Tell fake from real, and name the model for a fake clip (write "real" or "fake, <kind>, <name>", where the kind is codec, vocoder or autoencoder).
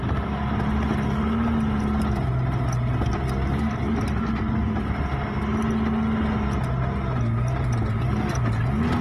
real